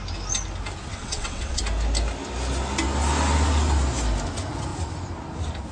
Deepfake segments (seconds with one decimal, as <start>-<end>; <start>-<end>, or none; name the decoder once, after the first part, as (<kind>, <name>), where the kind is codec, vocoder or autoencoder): 0.9-1.6 (vocoder, WaveNeXt)